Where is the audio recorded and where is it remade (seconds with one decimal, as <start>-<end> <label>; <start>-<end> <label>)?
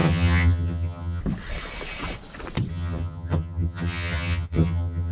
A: 0.0-1.2 remade; 1.2-2.7 recorded; 2.7-5.1 remade